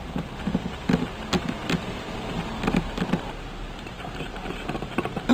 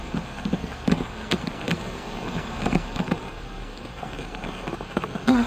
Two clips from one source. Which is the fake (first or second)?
second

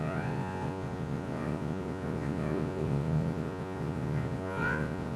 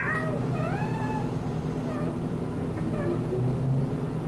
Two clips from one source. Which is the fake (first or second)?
first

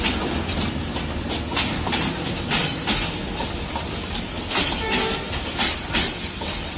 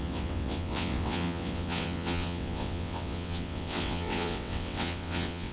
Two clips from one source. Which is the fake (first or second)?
second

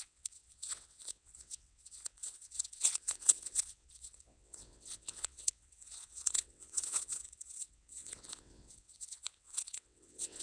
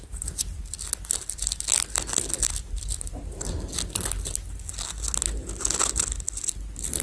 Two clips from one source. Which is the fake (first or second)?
first